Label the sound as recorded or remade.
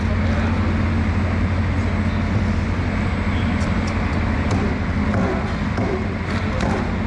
recorded